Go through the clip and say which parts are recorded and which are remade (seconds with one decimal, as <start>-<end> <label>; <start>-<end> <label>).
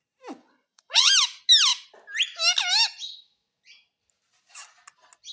0.0-0.4 recorded; 0.4-1.1 remade; 1.1-5.3 recorded